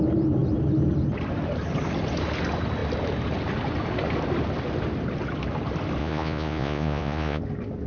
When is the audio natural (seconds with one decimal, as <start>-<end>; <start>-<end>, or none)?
0.0-6.0; 7.4-7.9